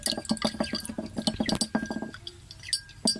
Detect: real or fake real